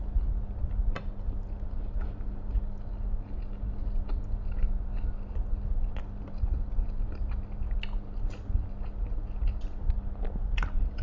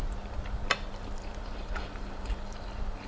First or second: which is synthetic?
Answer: second